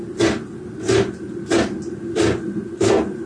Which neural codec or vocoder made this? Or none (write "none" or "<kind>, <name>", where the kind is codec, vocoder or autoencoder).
none